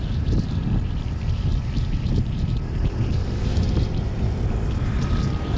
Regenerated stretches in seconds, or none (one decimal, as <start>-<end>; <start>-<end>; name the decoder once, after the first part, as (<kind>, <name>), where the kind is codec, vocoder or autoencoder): none